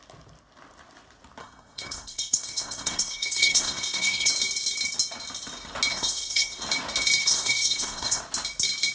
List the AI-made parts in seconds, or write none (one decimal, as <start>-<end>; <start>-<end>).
1.4-4.3; 5.9-6.6; 7.2-8.2